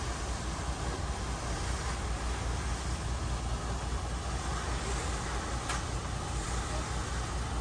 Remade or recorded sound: recorded